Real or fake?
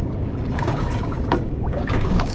fake